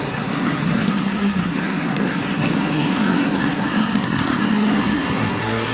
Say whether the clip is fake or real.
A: fake